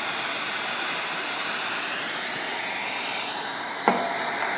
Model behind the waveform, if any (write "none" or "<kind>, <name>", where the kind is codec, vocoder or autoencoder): none